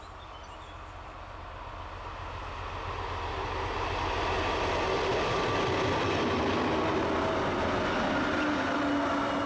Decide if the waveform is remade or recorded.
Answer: recorded